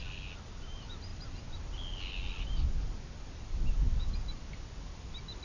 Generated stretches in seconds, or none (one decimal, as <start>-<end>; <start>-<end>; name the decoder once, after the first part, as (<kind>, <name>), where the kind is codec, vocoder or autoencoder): none